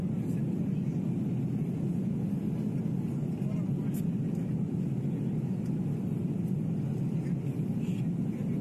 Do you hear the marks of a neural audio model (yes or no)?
no